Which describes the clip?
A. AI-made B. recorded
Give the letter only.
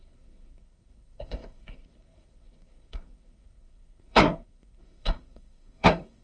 A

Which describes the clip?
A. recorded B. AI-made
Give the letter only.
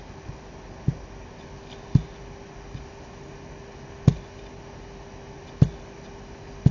A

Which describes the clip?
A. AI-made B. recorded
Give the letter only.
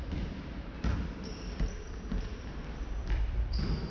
B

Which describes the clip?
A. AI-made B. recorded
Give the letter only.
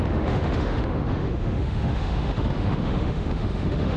A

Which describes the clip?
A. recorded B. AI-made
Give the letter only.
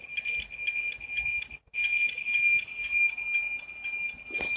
A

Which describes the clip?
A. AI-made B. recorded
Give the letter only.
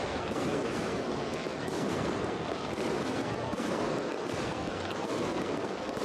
A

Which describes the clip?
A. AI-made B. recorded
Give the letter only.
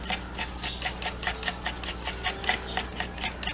B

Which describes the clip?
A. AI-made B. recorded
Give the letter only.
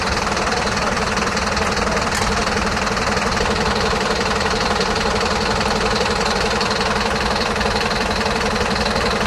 A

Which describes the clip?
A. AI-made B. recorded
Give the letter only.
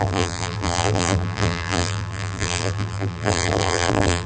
A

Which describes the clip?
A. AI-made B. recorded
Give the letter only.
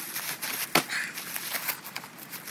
B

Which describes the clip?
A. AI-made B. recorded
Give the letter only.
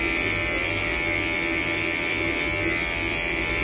B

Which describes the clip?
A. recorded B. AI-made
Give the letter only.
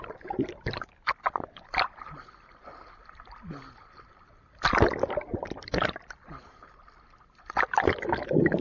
A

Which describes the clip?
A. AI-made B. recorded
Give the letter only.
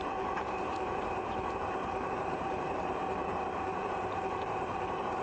A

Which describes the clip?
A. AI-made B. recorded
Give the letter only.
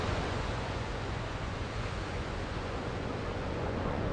A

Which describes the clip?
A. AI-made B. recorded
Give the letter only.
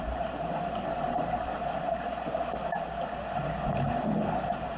B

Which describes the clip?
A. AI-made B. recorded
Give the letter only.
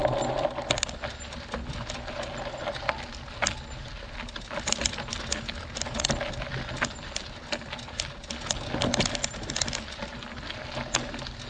B